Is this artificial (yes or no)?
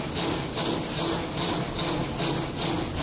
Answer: no